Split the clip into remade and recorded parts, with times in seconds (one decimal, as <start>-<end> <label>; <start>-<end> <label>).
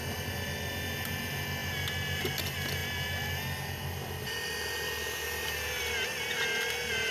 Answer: 0.0-7.1 recorded